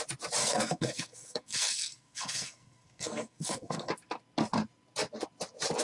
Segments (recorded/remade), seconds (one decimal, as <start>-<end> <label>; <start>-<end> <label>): 0.0-0.4 recorded; 0.4-3.9 remade; 3.9-5.8 recorded